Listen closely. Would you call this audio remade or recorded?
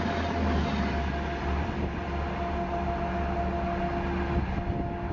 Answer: recorded